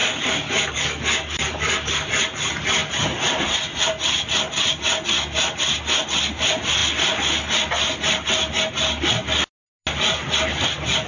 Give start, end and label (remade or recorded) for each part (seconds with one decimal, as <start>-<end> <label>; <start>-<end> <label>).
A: 0.0-2.1 remade; 2.1-11.1 recorded